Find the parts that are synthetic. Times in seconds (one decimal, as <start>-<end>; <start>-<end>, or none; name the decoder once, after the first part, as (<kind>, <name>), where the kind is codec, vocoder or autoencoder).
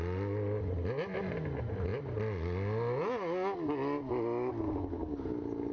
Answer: none